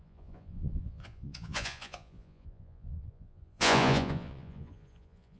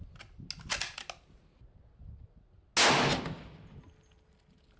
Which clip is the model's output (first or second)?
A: first